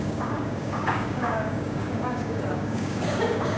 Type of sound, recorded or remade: remade